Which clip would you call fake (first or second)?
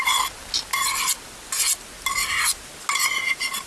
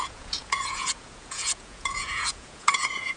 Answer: second